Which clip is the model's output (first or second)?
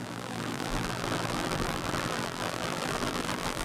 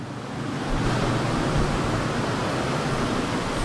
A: first